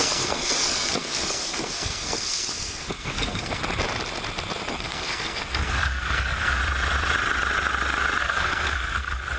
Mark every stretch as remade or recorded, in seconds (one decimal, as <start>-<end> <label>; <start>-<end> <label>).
0.0-3.6 remade; 3.6-4.7 recorded; 4.7-6.6 remade; 6.6-8.2 recorded; 8.2-9.4 remade